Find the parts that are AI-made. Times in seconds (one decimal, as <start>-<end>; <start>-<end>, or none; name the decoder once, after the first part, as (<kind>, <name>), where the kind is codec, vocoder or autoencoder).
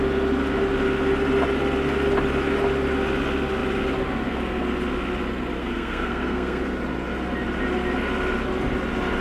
5.6-6.6 (codec, SNAC)